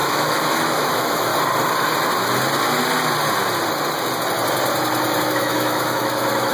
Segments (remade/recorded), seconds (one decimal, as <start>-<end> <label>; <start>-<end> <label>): 0.0-1.3 remade; 1.3-5.2 recorded; 5.2-6.5 remade